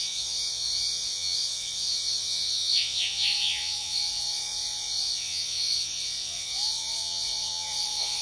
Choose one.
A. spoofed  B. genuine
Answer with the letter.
A